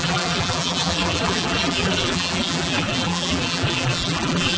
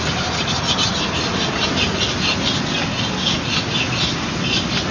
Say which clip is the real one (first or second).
second